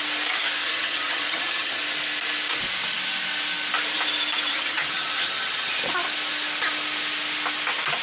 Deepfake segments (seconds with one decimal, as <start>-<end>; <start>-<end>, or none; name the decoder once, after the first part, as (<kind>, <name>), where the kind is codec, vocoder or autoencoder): 0.6-1.8 (vocoder, HiFi-GAN); 4.5-5.7